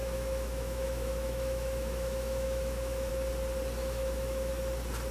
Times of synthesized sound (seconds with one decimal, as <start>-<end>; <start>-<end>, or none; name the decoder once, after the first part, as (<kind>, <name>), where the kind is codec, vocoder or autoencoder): 0.0-3.1 (autoencoder, DAC-VAE); 3.8-4.5